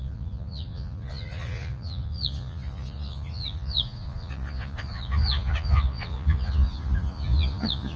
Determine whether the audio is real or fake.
fake